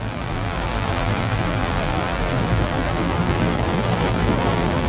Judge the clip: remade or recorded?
remade